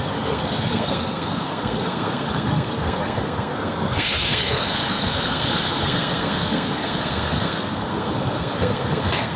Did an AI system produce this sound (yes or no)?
yes